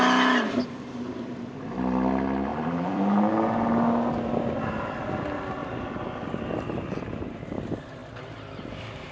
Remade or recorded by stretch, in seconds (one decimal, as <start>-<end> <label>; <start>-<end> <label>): 0.0-2.5 recorded; 2.5-3.3 remade; 3.3-5.6 recorded; 5.6-6.5 remade; 6.5-9.1 recorded